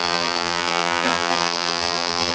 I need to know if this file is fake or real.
fake